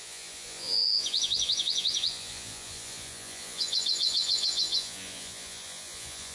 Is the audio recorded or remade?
remade